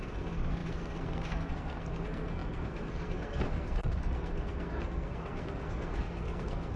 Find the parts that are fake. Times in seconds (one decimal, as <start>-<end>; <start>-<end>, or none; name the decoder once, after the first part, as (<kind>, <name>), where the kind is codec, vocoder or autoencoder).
0.0-6.8 (codec, SNAC)